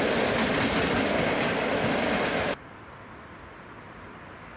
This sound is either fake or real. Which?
real